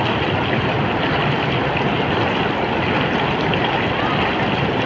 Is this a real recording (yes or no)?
yes